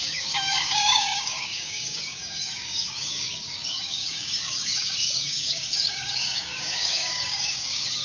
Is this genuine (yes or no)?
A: no